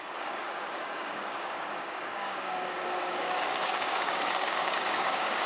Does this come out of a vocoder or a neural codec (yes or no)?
yes